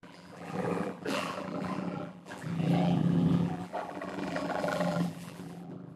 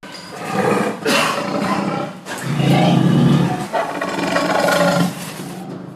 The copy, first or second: first